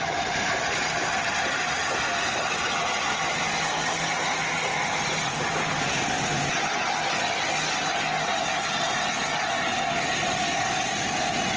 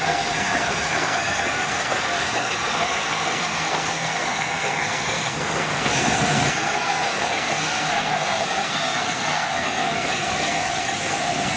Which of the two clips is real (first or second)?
first